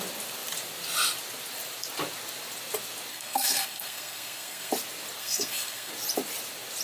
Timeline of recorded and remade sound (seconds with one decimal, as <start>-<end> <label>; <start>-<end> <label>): 0.0-3.1 recorded; 3.1-4.7 remade; 4.7-5.2 recorded; 5.2-5.9 remade; 5.9-6.8 recorded

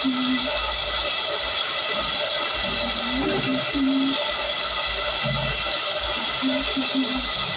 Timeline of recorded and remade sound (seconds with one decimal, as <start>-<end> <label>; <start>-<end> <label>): 0.0-7.6 recorded

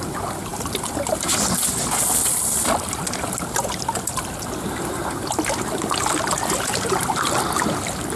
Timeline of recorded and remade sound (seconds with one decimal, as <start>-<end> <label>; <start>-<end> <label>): 0.0-0.5 recorded; 0.5-1.7 remade; 1.7-8.2 recorded

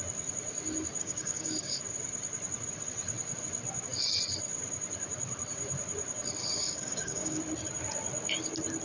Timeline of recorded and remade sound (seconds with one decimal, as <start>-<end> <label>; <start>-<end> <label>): 0.0-1.0 recorded; 1.0-1.8 remade; 1.8-6.4 recorded; 6.4-7.4 remade; 7.4-8.8 recorded

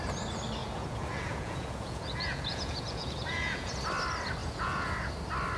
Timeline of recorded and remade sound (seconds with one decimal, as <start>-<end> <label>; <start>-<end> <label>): 0.0-0.6 recorded; 0.6-3.7 remade; 3.7-4.4 recorded; 4.4-5.1 remade; 5.1-5.6 recorded

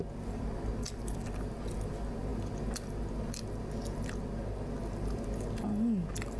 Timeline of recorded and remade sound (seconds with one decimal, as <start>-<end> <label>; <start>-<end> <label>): 0.0-6.4 recorded

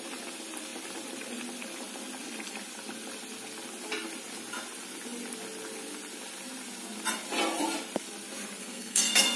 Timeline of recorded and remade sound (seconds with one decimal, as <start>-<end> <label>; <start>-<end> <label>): 0.0-8.6 recorded; 8.6-9.4 remade